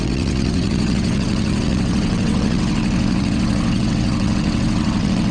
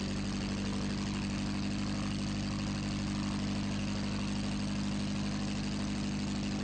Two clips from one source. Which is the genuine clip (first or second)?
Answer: second